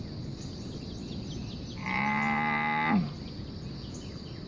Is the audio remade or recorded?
recorded